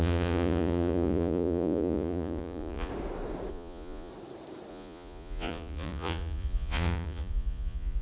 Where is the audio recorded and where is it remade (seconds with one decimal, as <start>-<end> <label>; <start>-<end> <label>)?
0.0-2.9 remade; 2.9-3.5 recorded; 3.5-4.1 remade; 4.1-4.7 recorded; 4.7-8.0 remade